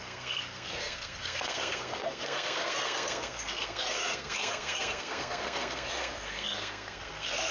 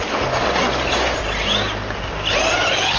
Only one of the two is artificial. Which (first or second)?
first